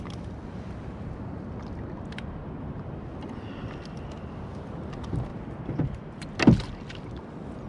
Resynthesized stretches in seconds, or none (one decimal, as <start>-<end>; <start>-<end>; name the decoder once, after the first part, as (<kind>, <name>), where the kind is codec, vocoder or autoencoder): none